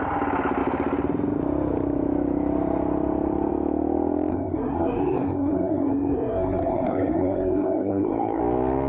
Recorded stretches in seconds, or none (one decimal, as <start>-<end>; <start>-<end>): 0.0-4.3; 8.4-8.9